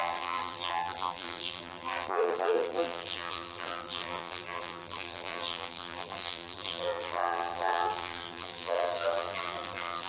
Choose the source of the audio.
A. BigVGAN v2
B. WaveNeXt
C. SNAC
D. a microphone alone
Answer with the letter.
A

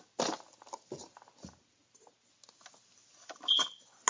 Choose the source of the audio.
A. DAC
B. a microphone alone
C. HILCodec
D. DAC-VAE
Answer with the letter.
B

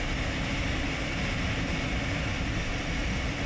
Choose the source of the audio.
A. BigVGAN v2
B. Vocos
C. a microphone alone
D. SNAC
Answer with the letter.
C